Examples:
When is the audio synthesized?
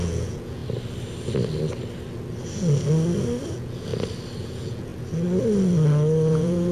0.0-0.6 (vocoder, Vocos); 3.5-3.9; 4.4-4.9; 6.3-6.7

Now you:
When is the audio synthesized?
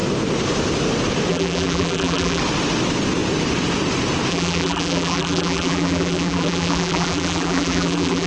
1.3-2.4 (vocoder, BigVGAN v2); 4.3-8.3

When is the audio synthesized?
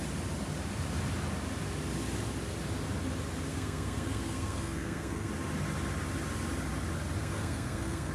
3.5-5.3 (codec, SNAC); 7.2-8.1